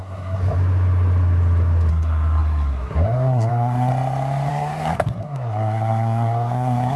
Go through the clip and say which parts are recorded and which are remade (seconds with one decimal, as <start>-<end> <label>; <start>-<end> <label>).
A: 0.0-0.4 remade; 0.4-1.9 recorded; 1.9-3.9 remade; 3.9-4.5 recorded; 4.5-7.0 remade